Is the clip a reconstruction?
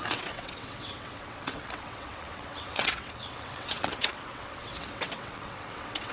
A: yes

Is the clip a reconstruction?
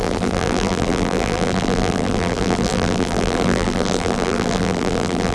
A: yes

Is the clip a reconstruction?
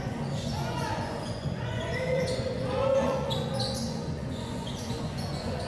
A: yes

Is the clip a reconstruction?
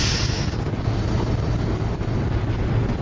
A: no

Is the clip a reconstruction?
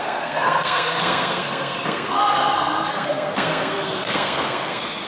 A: yes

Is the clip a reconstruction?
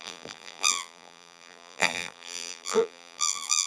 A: yes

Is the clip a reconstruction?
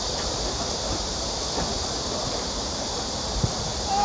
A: yes